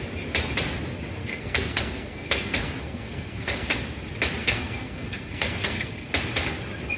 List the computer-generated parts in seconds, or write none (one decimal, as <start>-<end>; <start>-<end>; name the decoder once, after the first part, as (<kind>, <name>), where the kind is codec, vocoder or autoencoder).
1.2-3.8 (codec, SNAC); 4.4-6.1